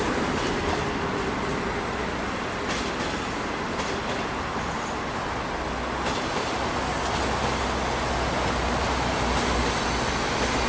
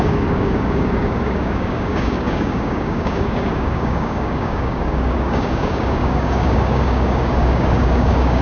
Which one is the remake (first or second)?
second